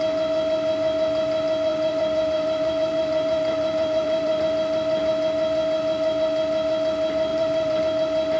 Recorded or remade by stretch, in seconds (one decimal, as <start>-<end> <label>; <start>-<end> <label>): 0.0-1.7 recorded; 1.7-4.4 remade; 4.4-7.3 recorded; 7.3-7.8 remade; 7.8-8.4 recorded